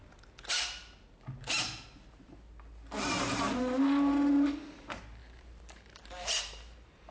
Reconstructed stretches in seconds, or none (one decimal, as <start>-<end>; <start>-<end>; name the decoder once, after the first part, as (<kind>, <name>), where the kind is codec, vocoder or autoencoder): 5.2-7.1 (vocoder, BigVGAN v2)